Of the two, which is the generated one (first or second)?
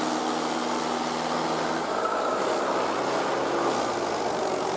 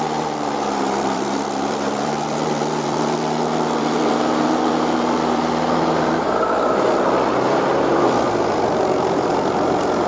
second